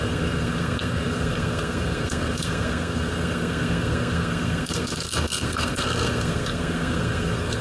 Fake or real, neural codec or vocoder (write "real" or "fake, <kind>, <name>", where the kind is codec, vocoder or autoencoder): fake, codec, SNAC